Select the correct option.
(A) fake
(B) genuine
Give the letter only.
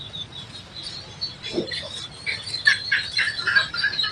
B